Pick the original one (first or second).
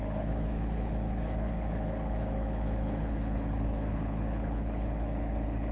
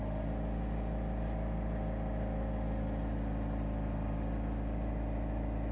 second